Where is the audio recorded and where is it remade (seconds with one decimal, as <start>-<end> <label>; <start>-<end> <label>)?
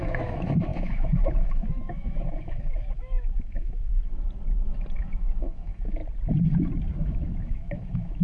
0.0-3.9 remade; 3.9-5.0 recorded; 5.0-6.0 remade; 6.0-6.9 recorded; 6.9-8.2 remade